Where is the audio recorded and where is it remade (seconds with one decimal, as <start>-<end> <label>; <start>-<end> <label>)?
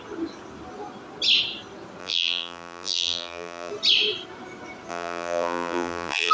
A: 0.0-2.0 recorded; 2.0-3.7 remade; 3.7-4.9 recorded; 4.9-6.3 remade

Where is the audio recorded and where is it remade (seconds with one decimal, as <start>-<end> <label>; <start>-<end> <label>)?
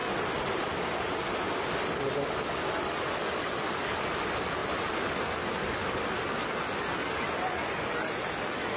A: 0.0-8.8 recorded